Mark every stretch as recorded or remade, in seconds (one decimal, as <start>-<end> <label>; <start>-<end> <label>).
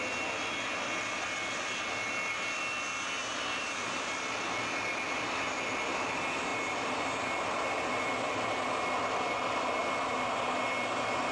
0.0-3.2 recorded; 3.2-4.0 remade; 4.0-11.3 recorded